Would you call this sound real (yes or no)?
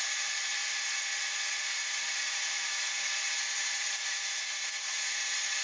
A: no